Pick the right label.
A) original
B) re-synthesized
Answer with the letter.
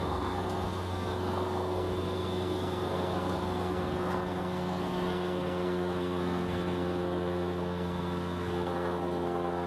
B